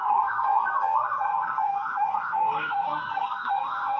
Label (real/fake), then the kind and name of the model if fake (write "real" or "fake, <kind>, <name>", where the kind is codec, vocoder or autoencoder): fake, codec, SNAC